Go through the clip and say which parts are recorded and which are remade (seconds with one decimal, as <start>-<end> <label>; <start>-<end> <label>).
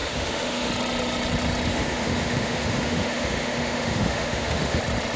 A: 0.0-0.7 remade; 0.7-1.7 recorded; 1.7-4.8 remade; 4.8-5.2 recorded